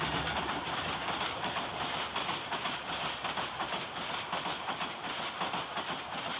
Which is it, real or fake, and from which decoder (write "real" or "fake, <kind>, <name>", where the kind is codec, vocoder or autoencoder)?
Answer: real